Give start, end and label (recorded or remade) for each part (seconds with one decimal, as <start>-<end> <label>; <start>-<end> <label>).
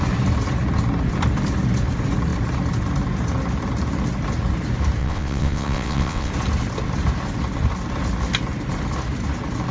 0.0-5.0 recorded; 5.0-6.3 remade; 6.3-9.7 recorded